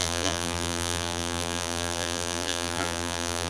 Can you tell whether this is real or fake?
fake